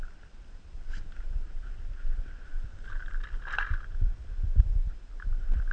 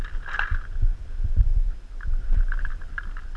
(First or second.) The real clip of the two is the second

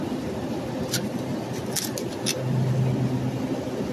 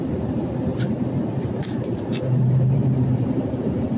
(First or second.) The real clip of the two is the first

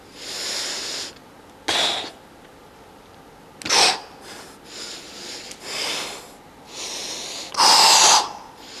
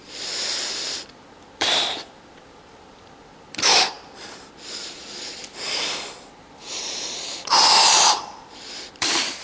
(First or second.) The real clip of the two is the first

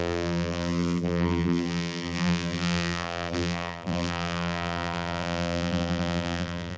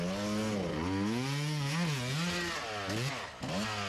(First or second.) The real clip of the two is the second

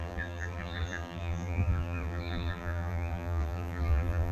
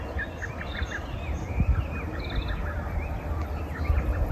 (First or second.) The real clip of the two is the second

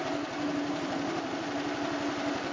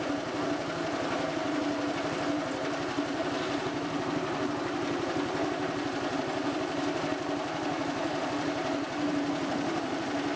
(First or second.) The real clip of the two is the first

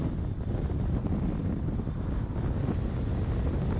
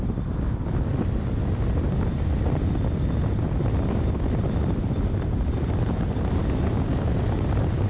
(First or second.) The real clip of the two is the first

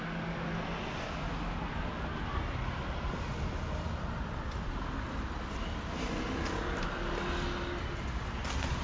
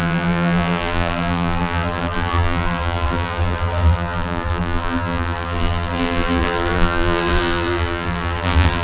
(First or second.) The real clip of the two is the first